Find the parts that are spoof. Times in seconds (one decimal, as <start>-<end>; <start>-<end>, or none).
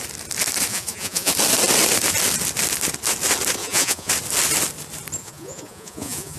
0.7-1.3; 3.6-4.1; 5.2-6.4